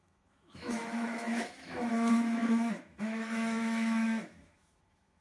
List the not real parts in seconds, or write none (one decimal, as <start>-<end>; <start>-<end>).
0.0-5.2